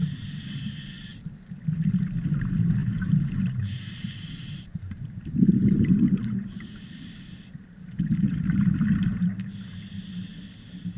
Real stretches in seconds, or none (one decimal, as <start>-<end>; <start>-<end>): 0.0-2.8; 7.3-11.0